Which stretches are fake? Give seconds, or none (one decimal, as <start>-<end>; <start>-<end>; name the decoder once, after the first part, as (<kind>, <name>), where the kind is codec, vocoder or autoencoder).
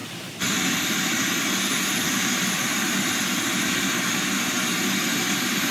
0.0-3.4 (vocoder, BigVGAN v2)